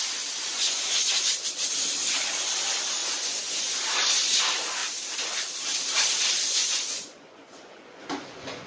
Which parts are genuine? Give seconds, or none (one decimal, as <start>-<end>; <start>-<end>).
0.0-0.5; 1.1-3.0; 3.8-6.6